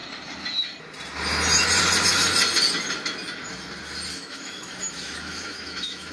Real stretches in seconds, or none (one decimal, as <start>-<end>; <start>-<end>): 0.0-4.1